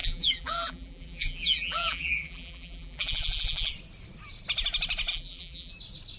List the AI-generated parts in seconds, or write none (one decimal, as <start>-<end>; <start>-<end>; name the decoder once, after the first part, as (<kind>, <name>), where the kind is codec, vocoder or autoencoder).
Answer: 0.0-3.7 (vocoder, BigVGAN v2); 5.1-5.7